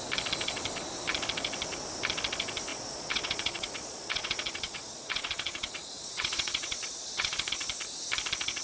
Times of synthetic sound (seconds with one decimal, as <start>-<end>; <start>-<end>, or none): 2.7-7.5